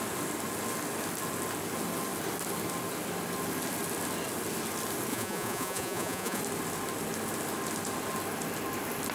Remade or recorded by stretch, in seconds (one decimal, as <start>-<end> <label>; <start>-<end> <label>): 0.0-5.1 recorded; 5.1-6.4 remade; 6.4-9.1 recorded